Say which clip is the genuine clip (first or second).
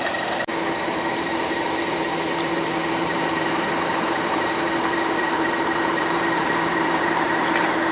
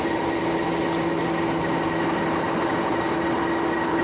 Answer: second